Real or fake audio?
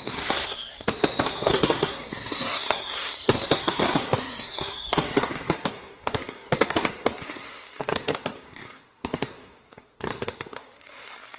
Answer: fake